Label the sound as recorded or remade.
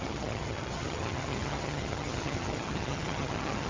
remade